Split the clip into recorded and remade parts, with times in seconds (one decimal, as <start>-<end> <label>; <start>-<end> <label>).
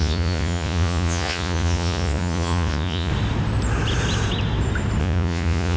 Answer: 0.0-3.1 remade; 3.1-5.0 recorded; 5.0-5.8 remade